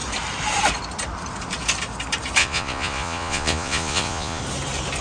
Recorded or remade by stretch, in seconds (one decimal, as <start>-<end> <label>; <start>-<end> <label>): 0.0-2.4 recorded; 2.4-4.4 remade; 4.4-5.0 recorded